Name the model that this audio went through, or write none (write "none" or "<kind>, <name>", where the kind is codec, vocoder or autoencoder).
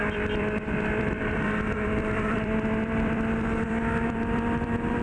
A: vocoder, BigVGAN v2